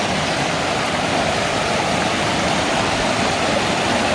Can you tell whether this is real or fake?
real